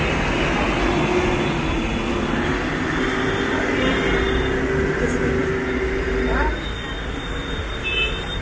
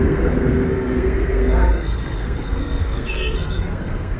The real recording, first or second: first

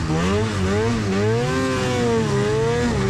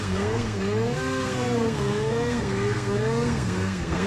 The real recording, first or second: first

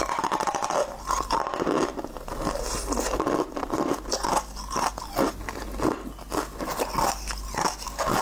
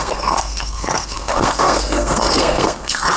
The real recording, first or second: first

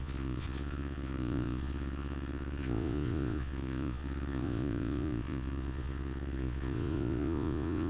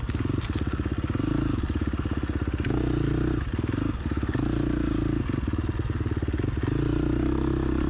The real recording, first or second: second